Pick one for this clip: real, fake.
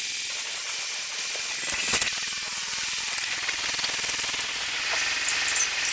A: real